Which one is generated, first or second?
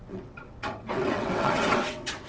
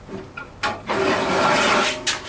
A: first